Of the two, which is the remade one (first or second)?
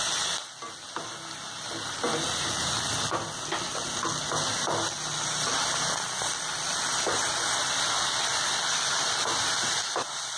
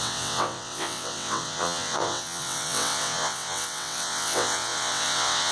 second